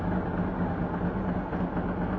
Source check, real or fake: real